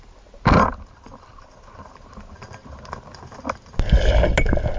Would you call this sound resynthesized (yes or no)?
no